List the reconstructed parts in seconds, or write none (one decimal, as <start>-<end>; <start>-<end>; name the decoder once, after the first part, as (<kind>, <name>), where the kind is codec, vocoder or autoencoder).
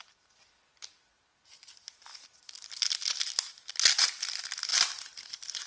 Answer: none